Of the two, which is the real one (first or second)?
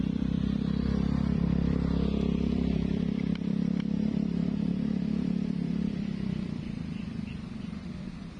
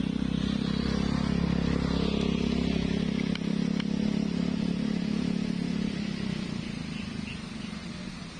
second